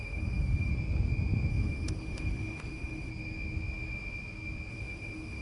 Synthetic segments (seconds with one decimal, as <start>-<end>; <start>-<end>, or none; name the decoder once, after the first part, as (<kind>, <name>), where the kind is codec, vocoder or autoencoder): 0.0-0.7 (autoencoder, DAC-VAE); 1.5-3.1; 4.7-5.4